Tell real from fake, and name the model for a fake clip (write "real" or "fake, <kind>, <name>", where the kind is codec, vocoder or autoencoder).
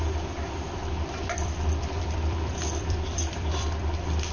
fake, vocoder, BigVGAN v2